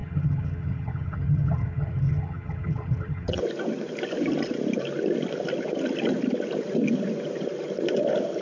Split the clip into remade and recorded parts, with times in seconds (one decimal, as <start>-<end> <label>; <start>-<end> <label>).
0.0-3.4 remade; 3.4-8.4 recorded